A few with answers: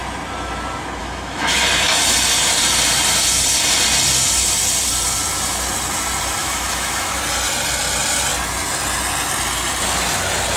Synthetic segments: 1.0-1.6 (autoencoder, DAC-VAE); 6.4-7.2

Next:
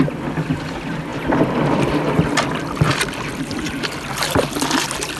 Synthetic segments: none

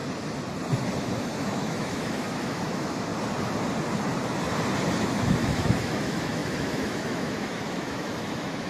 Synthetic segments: 1.0-3.1 (autoencoder, DAC-VAE); 5.0-8.7